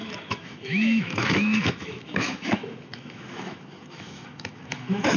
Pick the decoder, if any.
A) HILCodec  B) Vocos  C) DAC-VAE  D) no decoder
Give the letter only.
C